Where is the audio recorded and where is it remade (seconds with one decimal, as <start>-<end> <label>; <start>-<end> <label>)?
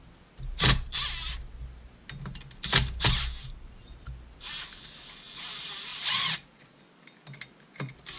0.0-5.9 recorded; 5.9-6.8 remade; 6.8-8.2 recorded